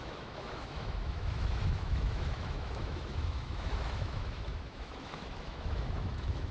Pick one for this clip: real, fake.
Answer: fake